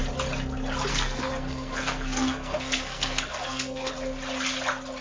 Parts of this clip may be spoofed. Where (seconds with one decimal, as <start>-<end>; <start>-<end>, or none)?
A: 0.9-3.9

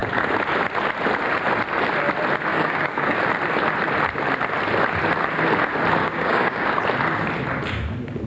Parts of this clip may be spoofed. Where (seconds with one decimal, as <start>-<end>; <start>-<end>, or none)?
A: 2.5-3.2; 6.0-6.8